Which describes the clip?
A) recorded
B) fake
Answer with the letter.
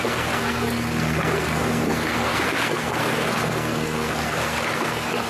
B